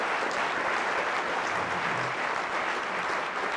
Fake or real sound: real